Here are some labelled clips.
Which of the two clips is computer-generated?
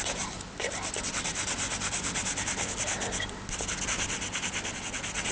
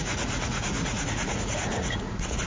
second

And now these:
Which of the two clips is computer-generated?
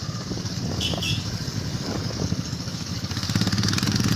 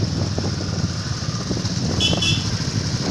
first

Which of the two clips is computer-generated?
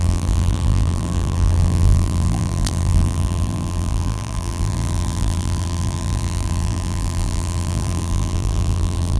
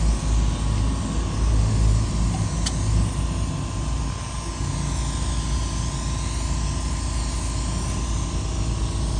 first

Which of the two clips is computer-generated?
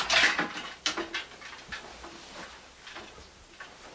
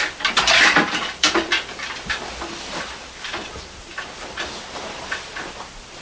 second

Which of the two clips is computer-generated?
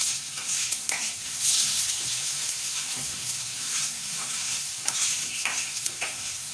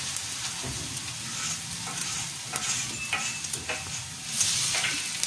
first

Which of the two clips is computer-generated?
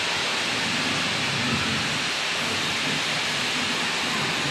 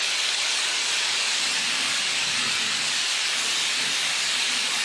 second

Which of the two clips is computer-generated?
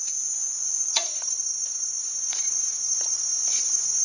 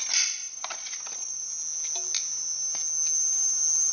first